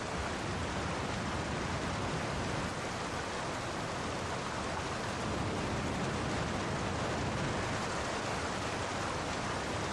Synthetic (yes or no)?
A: no